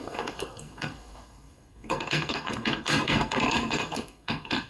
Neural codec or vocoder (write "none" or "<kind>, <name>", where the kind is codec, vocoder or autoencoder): codec, SNAC